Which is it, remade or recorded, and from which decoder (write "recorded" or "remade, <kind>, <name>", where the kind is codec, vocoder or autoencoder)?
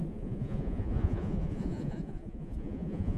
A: remade, vocoder, Vocos